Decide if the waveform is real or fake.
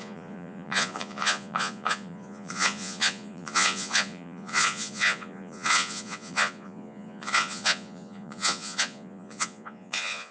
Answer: fake